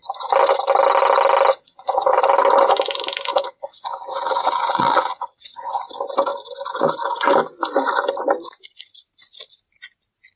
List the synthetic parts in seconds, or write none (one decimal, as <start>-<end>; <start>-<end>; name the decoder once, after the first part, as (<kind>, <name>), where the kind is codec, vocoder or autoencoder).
1.5-2.2 (vocoder, WaveNeXt); 3.3-5.8